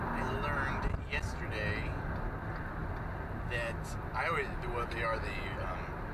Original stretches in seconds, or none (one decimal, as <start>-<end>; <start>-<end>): 0.0-6.1